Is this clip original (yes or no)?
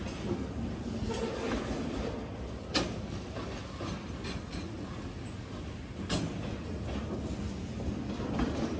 yes